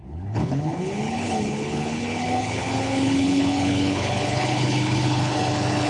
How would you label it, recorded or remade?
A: remade